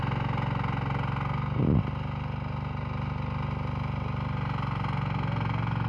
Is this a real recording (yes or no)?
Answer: yes